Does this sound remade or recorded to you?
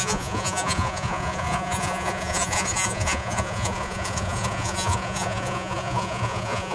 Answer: remade